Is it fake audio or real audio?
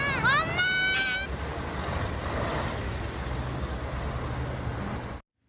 real